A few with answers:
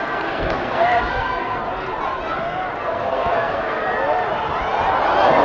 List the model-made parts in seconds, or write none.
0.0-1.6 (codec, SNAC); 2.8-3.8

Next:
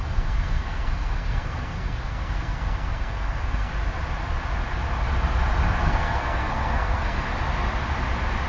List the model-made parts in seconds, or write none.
0.0-3.7 (codec, SNAC); 5.8-7.3

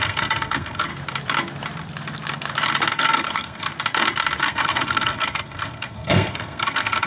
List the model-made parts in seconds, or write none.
0.0-0.9 (codec, SNAC); 2.9-3.7; 4.4-7.1

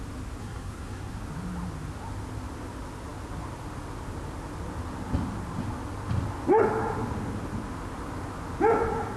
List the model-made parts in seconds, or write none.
0.4-1.2 (codec, SNAC)

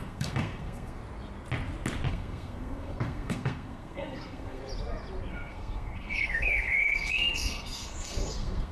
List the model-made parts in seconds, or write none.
0.0-1.0 (codec, SNAC); 2.1-4.6; 5.3-8.7

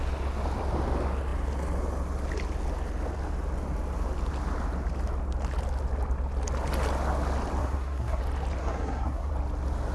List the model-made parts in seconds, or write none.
7.6-8.2 (codec, SNAC); 8.6-9.3

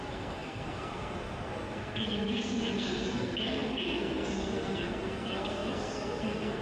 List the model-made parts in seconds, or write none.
0.0-6.6 (codec, SNAC)

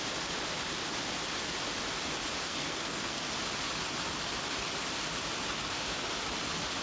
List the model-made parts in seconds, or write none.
2.4-3.3 (codec, SNAC)